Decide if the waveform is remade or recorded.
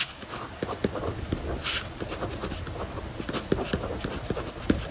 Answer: recorded